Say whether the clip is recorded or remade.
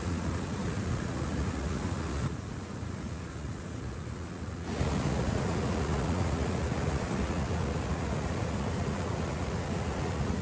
remade